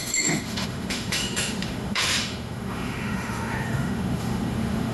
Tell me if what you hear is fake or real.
fake